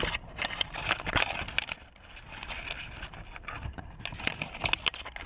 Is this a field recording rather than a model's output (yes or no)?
yes